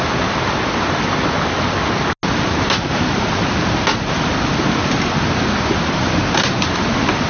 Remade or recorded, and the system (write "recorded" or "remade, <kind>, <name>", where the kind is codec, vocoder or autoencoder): recorded